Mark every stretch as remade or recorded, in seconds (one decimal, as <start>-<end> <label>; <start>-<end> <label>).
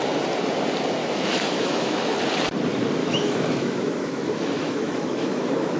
0.0-1.0 recorded; 1.0-2.2 remade; 2.2-3.0 recorded; 3.0-5.8 remade